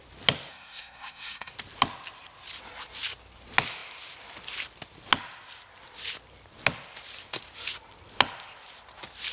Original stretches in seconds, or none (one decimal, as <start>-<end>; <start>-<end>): 0.0-0.5; 1.5-9.3